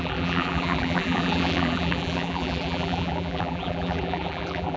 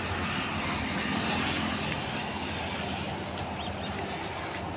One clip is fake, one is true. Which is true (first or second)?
second